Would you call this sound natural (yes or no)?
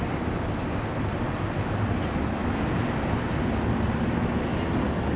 yes